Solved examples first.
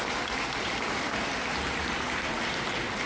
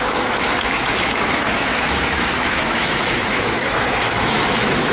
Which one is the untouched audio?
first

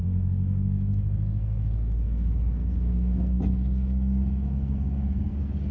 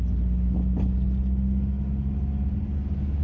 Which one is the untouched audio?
second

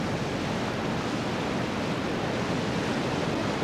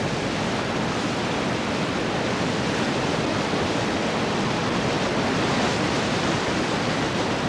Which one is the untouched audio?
first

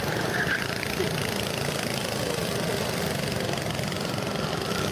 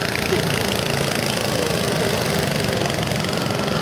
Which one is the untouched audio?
second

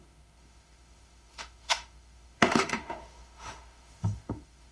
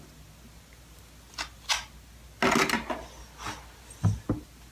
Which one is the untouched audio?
second